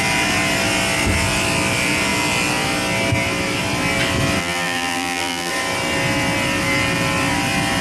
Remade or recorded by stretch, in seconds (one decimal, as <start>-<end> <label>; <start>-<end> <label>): 0.0-4.4 recorded; 4.4-5.5 remade; 5.5-7.8 recorded